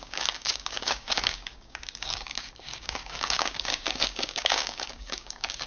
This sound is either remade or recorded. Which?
remade